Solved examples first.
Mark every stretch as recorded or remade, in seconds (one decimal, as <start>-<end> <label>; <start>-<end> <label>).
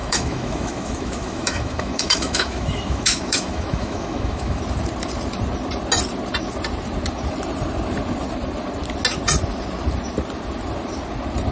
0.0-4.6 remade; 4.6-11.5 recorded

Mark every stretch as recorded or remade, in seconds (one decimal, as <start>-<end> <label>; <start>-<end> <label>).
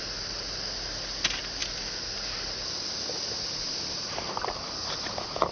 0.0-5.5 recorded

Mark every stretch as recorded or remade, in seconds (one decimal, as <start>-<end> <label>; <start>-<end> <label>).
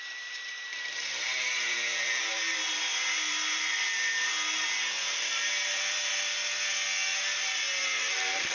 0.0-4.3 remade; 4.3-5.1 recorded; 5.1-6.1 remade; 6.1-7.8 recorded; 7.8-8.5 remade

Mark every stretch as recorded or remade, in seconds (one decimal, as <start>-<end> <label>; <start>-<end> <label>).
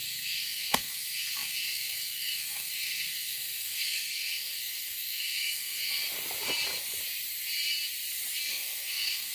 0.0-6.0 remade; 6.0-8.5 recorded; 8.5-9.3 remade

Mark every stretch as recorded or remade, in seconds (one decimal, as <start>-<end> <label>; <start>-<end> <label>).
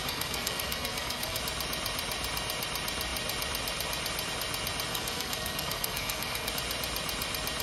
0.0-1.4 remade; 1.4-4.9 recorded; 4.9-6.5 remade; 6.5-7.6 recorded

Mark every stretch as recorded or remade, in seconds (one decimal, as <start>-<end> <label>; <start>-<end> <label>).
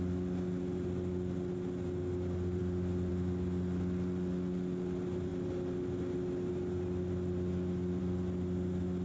0.0-9.0 recorded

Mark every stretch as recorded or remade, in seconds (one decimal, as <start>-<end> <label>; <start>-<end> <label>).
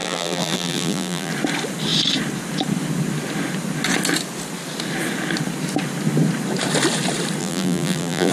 0.0-1.3 remade; 1.3-7.4 recorded; 7.4-8.3 remade